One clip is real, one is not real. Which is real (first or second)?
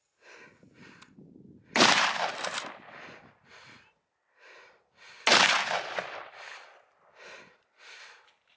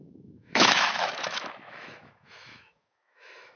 first